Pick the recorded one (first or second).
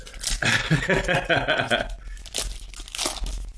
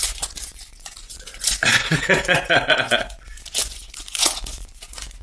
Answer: first